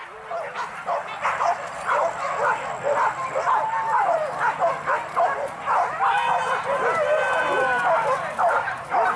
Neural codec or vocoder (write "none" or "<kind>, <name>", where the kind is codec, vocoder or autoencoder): none